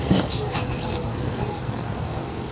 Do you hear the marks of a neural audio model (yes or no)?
yes